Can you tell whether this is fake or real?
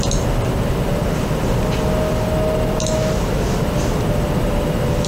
real